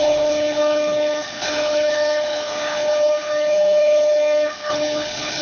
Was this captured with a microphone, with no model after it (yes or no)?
no